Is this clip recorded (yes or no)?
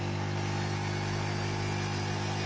yes